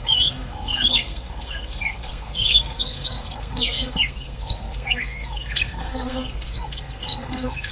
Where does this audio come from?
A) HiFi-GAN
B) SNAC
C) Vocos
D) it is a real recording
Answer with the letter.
B